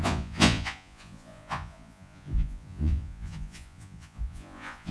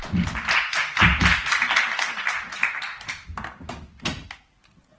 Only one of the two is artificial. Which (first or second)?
first